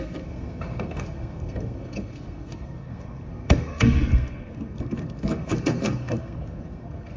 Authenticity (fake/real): fake